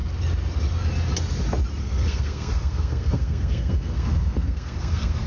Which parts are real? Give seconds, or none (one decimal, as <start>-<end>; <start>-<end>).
0.0-1.8